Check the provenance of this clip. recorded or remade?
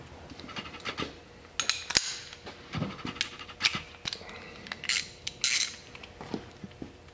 recorded